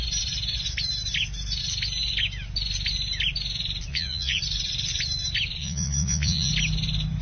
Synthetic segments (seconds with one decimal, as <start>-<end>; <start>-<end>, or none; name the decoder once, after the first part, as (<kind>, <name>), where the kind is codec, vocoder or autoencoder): 3.9-4.4 (vocoder, Vocos); 5.6-6.5